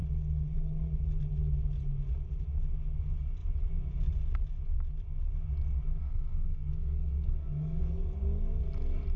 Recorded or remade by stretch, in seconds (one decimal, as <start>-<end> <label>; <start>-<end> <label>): 0.0-6.0 recorded; 6.0-7.9 remade; 7.9-9.2 recorded